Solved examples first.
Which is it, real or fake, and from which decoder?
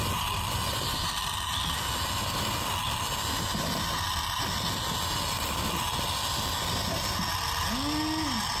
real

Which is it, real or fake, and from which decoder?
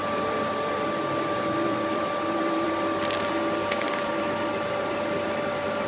fake, vocoder, BigVGAN v2